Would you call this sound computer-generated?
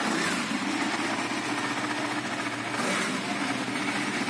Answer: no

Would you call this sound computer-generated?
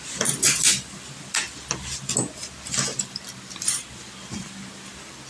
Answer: no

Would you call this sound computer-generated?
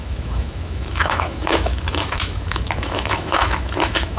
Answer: yes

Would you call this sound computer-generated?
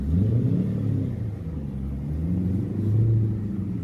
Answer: no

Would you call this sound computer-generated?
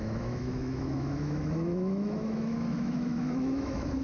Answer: yes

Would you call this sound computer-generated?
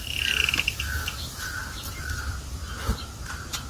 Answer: no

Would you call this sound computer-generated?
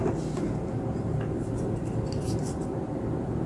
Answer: no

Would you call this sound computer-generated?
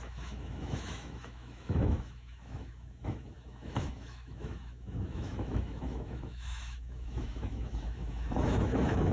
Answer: yes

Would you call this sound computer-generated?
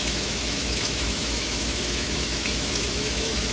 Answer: yes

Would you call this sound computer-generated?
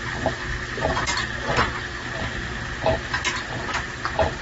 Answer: no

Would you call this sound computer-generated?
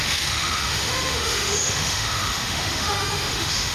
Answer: yes